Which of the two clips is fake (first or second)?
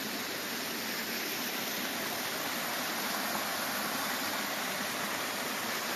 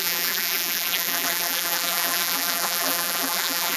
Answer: second